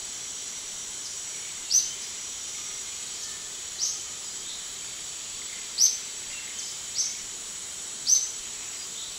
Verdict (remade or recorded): remade